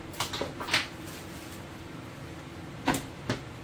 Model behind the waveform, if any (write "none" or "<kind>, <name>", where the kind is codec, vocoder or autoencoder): none